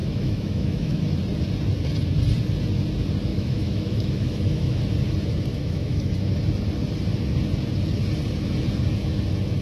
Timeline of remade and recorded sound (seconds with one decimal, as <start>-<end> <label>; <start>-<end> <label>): 0.0-1.0 remade; 1.0-3.3 recorded; 3.3-4.8 remade; 4.8-5.5 recorded; 5.5-6.1 remade; 6.1-9.6 recorded